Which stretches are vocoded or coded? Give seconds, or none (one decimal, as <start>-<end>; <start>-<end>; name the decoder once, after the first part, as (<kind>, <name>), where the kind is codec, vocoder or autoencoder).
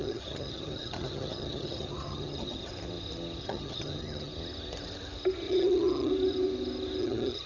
0.0-2.7 (vocoder, HiFi-GAN); 3.4-4.3; 5.5-6.1; 7.0-7.5